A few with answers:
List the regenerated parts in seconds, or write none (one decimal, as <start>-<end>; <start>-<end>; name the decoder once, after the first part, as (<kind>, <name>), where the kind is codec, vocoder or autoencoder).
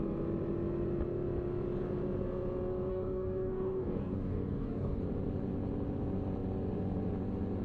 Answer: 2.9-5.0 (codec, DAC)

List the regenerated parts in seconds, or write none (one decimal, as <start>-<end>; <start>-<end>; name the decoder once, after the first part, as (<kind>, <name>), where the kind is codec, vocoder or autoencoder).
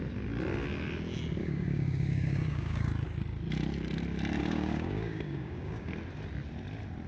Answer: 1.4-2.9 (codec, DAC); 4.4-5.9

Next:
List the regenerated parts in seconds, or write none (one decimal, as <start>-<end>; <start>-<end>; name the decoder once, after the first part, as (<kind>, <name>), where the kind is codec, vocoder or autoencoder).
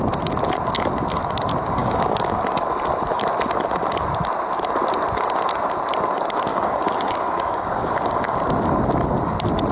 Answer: 1.8-2.4 (codec, DAC); 6.5-8.4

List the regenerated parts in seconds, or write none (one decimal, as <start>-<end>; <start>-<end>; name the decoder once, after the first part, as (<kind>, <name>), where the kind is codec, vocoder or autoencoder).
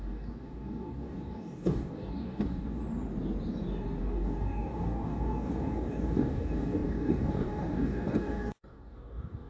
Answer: 0.0-2.8 (codec, DAC); 4.0-9.5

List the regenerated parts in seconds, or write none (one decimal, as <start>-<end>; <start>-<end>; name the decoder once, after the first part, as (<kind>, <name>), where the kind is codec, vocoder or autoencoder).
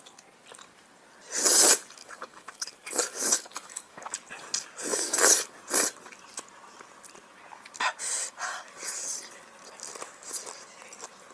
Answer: 2.0-4.1 (codec, DAC); 4.9-5.5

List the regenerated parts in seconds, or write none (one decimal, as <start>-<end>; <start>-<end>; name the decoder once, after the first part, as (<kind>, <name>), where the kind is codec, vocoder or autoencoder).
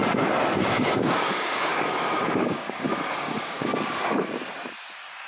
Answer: 0.6-3.7 (codec, DAC)